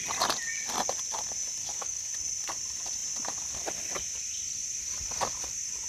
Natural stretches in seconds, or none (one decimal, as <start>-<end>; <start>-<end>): 0.0-1.6; 2.1-5.9